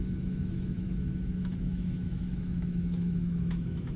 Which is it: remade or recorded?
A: remade